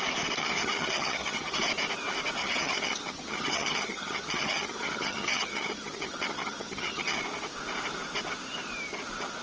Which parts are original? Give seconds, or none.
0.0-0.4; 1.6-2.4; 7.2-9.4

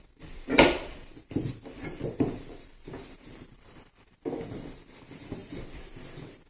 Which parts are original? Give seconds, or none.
5.4-6.5

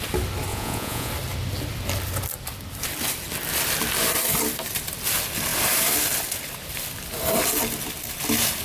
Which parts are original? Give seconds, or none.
0.0-0.5; 1.1-8.6

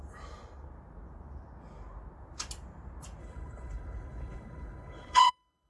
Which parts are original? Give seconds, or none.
0.0-3.2